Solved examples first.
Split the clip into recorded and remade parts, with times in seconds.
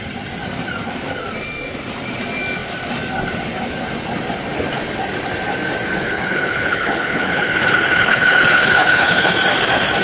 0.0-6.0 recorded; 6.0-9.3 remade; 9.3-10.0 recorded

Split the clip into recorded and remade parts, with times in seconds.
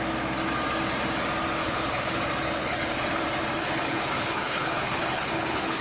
0.0-1.6 recorded; 1.6-2.2 remade; 2.2-2.6 recorded; 2.6-3.2 remade; 3.2-3.6 recorded; 3.6-5.8 remade